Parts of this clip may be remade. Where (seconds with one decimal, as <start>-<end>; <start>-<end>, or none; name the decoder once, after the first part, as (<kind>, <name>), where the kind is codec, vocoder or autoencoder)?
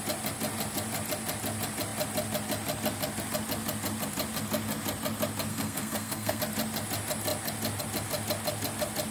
5.5-6.4 (codec, SNAC)